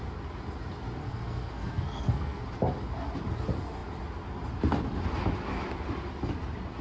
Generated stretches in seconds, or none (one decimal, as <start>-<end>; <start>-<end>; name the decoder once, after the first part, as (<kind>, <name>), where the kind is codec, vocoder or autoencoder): 1.0-2.4 (codec, SNAC)